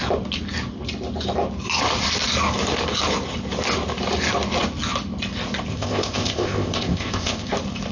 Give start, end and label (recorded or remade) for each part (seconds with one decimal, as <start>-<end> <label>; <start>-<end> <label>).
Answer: 0.0-5.7 recorded; 5.7-7.5 remade; 7.5-7.9 recorded